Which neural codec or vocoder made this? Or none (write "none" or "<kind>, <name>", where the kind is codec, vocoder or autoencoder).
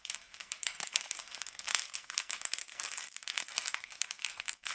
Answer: codec, SNAC